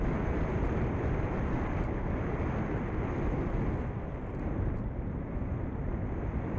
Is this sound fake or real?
real